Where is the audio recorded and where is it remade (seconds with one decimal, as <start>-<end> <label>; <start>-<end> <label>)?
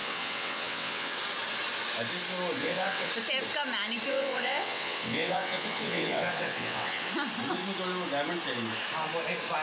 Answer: 0.0-1.2 remade; 1.2-2.6 recorded; 2.6-3.1 remade; 3.1-4.1 recorded; 4.1-7.1 remade; 7.1-9.6 recorded